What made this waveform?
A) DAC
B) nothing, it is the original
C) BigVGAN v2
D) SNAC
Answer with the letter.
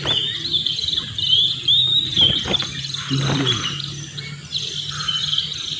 B